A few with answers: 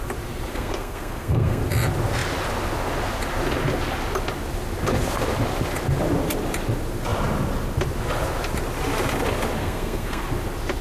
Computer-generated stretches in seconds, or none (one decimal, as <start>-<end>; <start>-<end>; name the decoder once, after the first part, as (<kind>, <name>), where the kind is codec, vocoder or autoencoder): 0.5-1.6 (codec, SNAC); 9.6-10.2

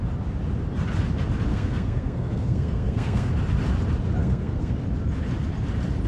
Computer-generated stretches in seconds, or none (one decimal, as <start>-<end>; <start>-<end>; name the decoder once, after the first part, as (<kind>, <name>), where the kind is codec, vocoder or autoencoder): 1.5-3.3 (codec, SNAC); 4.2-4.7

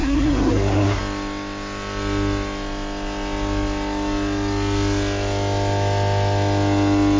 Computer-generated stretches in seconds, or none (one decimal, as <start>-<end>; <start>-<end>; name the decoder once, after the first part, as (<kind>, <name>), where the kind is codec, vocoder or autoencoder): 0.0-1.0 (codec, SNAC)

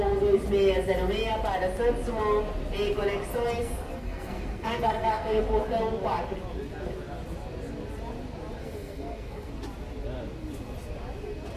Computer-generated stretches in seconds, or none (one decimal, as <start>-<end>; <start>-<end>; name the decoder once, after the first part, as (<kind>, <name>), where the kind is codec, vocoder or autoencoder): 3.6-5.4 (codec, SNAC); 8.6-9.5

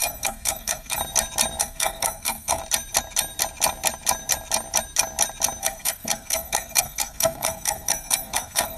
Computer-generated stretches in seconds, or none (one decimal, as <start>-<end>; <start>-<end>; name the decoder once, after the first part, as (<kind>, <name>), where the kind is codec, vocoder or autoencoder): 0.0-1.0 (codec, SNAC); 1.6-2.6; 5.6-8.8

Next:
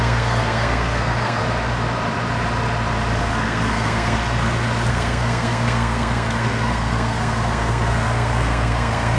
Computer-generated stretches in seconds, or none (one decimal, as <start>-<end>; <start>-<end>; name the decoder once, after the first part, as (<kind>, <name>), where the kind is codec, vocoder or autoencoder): 0.0-1.4 (codec, SNAC); 3.2-4.2; 4.9-9.2